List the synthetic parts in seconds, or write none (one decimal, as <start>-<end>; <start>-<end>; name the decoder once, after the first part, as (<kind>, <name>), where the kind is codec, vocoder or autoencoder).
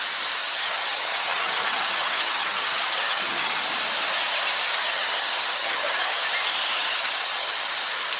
0.4-3.6 (vocoder, HiFi-GAN); 4.8-6.1; 6.7-7.7